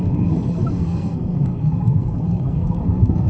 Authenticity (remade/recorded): remade